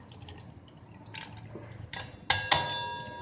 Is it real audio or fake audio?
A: real